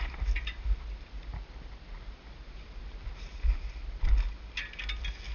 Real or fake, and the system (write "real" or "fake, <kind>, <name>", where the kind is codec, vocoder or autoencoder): real